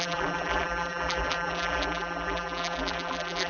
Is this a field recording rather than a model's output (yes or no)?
no